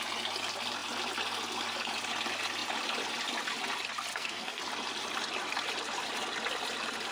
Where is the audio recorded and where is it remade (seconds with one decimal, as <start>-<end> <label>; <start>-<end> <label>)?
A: 0.0-4.1 recorded; 4.1-4.6 remade; 4.6-7.1 recorded